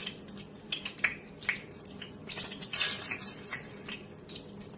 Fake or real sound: real